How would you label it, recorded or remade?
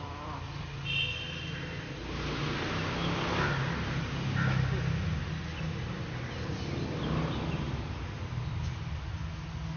recorded